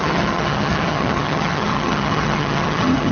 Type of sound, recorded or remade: remade